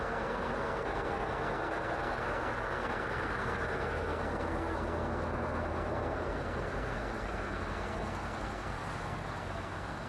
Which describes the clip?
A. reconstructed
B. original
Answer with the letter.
A